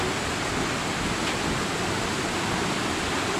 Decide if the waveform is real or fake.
real